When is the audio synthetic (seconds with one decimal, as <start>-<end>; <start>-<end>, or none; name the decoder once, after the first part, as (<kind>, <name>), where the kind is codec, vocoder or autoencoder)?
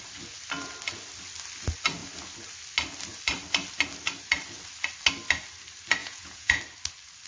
6.0-6.6 (vocoder, Vocos)